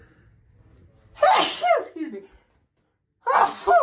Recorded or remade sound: recorded